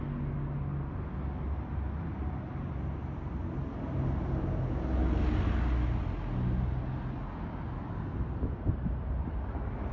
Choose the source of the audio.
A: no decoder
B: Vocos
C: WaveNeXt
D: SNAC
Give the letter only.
A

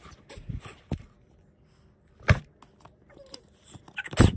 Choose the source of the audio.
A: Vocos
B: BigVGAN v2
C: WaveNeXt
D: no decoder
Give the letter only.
D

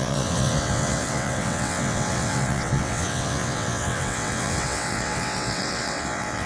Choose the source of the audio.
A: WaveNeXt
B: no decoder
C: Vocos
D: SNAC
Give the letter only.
A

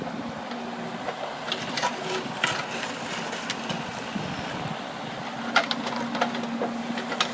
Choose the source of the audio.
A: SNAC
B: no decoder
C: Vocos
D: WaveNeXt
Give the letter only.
B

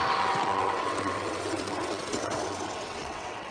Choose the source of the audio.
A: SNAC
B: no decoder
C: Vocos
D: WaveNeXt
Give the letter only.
D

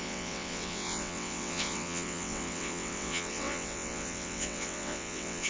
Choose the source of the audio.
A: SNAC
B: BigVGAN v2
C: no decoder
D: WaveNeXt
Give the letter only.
D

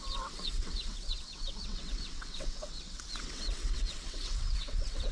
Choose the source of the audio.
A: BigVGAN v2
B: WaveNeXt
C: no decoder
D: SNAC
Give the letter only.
B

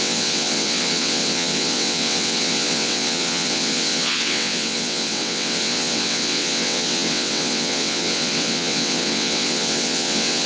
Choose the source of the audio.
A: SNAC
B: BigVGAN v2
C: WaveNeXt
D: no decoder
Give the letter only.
C